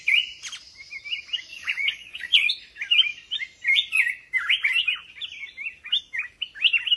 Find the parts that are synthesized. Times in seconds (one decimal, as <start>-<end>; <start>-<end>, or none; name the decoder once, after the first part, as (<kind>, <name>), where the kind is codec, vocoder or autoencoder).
1.5-2.5 (vocoder, Vocos)

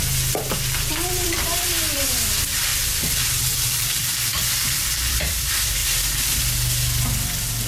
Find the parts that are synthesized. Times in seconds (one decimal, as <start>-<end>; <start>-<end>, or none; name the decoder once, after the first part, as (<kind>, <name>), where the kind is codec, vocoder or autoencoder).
0.0-5.8 (vocoder, BigVGAN v2)

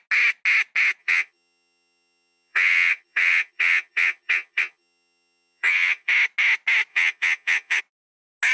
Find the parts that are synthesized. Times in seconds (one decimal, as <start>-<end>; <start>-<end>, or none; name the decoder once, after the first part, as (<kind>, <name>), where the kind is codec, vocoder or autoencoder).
1.0-6.1 (vocoder, HiFi-GAN); 6.9-7.8

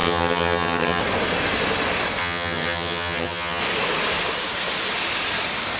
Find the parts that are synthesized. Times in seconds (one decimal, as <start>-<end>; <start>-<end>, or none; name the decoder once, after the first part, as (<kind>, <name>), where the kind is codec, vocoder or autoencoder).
0.0-1.0 (vocoder, HiFi-GAN); 2.2-3.6

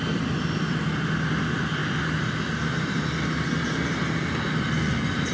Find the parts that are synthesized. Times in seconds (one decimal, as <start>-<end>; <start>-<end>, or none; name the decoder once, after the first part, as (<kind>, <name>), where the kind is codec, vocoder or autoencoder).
none

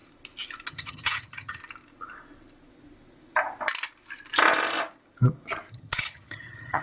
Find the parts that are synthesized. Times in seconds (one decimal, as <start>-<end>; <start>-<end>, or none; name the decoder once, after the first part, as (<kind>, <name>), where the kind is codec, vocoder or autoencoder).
0.7-1.6 (vocoder, HiFi-GAN); 5.7-6.8

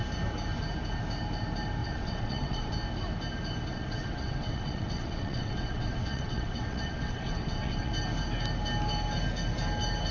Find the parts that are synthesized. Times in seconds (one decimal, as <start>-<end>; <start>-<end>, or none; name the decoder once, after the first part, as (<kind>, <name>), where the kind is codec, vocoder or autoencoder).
1.8-2.7 (vocoder, WaveNeXt); 3.7-7.9